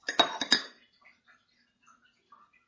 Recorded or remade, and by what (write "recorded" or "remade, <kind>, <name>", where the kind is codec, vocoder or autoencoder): recorded